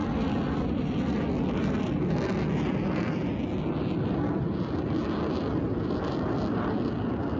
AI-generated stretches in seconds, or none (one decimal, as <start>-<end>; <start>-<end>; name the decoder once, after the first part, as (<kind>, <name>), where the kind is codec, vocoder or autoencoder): none